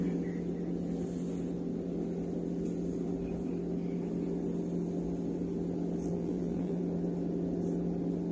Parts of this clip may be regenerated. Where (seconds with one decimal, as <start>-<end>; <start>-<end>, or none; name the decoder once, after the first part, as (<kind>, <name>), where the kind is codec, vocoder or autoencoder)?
6.1-6.8 (vocoder, BigVGAN v2)